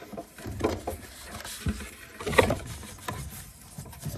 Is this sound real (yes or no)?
yes